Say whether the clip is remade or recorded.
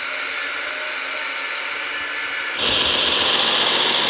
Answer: recorded